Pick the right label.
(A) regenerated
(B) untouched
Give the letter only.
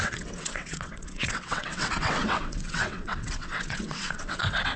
A